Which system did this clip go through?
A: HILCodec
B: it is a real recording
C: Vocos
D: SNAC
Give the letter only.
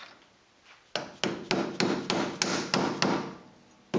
B